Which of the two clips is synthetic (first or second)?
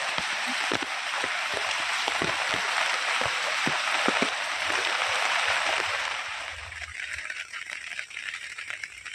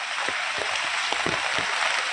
first